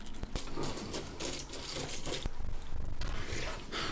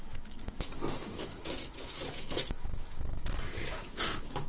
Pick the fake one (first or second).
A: second